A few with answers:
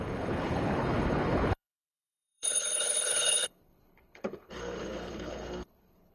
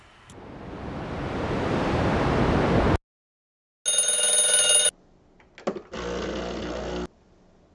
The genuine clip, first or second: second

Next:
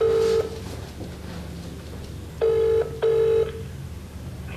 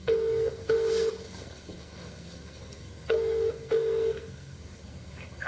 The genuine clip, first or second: first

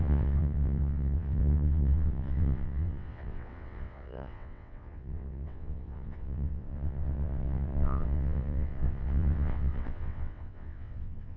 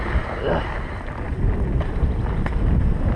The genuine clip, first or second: second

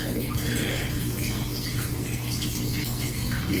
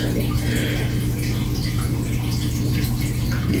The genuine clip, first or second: second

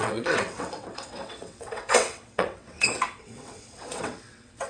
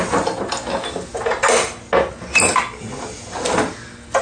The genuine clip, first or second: second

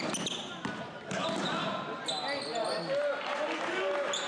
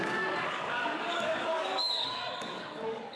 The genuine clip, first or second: first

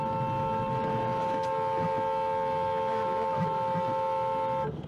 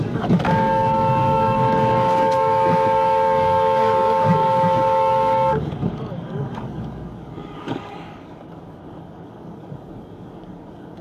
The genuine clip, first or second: first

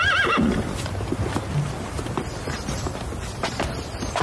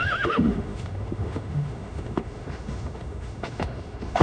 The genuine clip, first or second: first